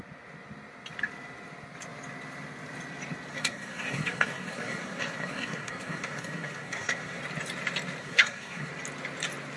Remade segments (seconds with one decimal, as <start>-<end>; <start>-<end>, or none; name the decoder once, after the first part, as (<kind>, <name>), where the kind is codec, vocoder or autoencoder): 3.3-7.2 (codec, SNAC); 8.0-8.7